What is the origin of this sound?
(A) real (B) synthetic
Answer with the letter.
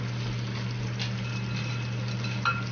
A